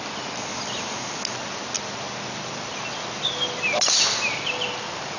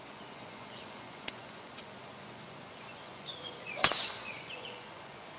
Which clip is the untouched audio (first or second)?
first